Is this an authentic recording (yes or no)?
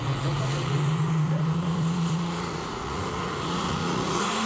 no